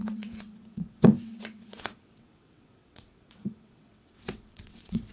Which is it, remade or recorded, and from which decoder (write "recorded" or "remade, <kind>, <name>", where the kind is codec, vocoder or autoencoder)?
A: remade, vocoder, WaveNeXt